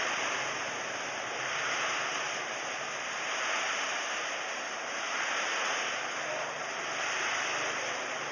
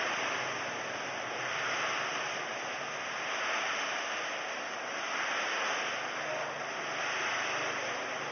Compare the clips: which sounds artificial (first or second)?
first